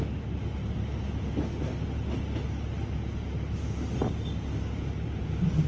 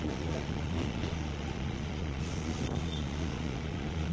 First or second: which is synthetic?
second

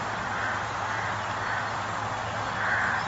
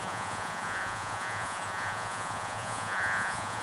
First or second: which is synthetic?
second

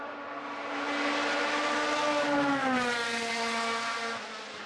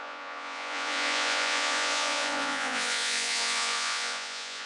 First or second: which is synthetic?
second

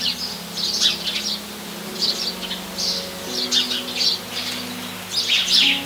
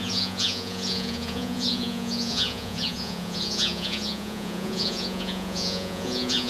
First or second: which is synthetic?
second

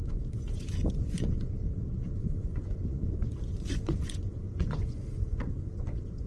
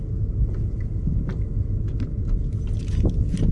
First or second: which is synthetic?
first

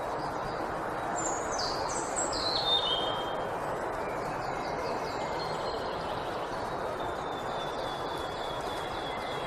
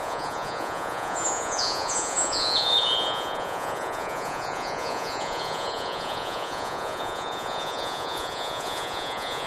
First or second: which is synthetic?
second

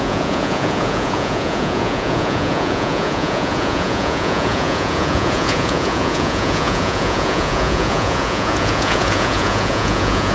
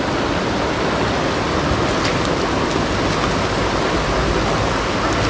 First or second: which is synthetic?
first